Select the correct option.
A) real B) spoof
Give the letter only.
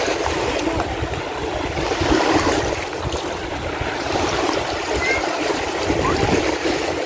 B